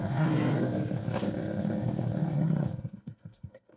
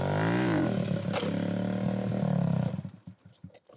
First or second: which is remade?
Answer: first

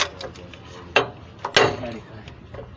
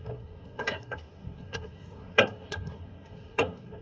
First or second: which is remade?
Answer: second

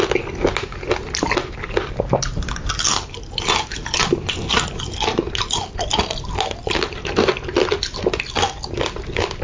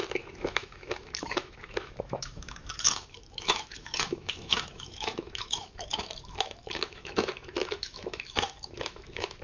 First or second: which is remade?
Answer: second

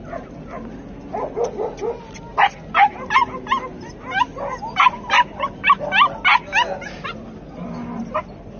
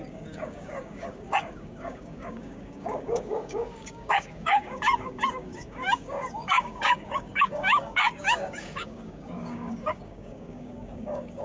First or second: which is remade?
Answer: second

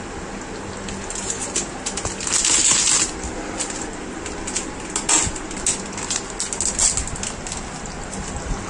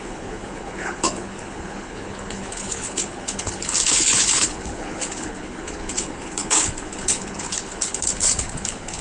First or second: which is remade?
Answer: second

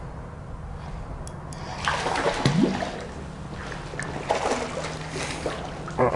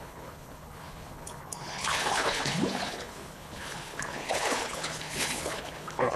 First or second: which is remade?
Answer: second